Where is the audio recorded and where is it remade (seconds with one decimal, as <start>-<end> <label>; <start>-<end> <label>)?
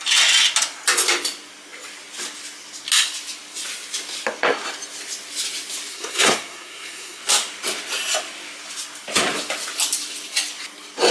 0.0-5.9 recorded; 5.9-7.2 remade; 7.2-11.1 recorded